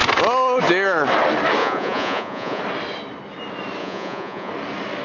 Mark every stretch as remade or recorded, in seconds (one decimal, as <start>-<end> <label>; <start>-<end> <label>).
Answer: 0.0-1.6 recorded; 1.6-2.6 remade; 2.6-3.8 recorded; 3.8-4.5 remade; 4.5-5.0 recorded